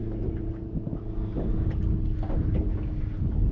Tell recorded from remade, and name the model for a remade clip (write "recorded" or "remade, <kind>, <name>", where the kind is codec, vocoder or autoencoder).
recorded